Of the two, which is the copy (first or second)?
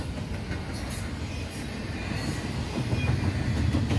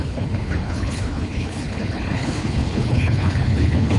second